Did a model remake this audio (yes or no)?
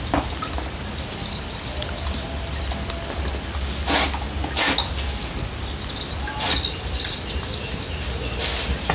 no